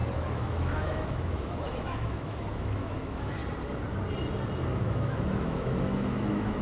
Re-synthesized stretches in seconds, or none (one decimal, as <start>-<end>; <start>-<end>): 0.0-3.4; 4.7-6.6